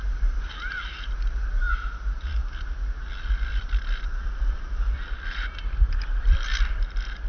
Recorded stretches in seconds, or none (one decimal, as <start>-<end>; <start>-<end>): 0.0-3.5; 6.8-7.3